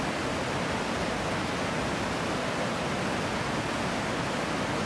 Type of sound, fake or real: real